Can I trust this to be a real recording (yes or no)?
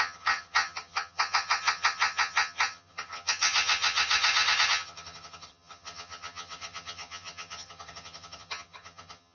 no